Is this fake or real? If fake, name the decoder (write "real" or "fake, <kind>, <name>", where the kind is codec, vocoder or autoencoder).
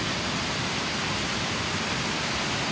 real